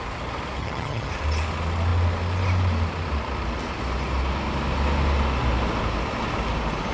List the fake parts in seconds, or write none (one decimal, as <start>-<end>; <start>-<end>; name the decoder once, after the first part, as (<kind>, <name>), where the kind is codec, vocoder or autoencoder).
0.6-1.1 (vocoder, HiFi-GAN)